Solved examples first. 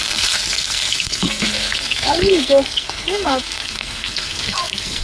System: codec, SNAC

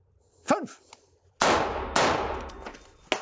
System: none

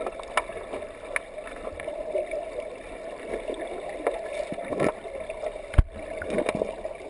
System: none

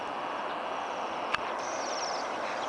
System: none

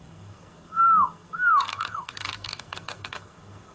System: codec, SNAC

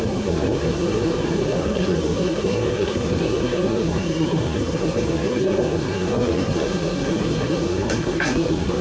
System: codec, SNAC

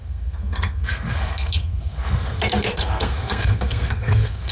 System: codec, SNAC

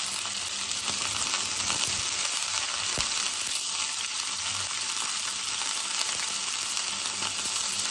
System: none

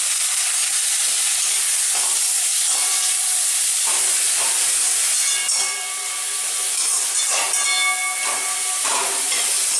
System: none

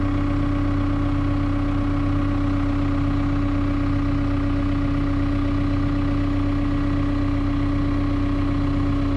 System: none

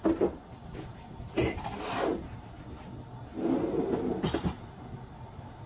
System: none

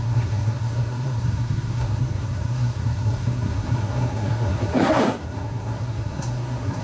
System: codec, SNAC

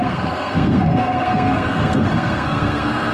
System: codec, SNAC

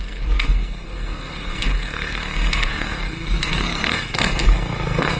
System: codec, SNAC